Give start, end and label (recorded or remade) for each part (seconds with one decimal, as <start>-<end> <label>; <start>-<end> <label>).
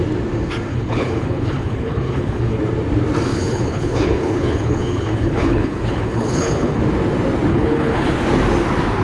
0.0-0.7 recorded; 0.7-2.6 remade; 2.6-3.3 recorded; 3.3-6.8 remade; 6.8-7.5 recorded; 7.5-8.1 remade; 8.1-9.0 recorded